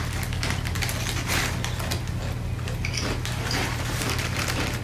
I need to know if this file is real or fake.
real